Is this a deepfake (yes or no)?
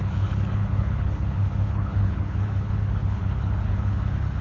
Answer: yes